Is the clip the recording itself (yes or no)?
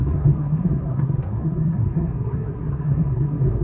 no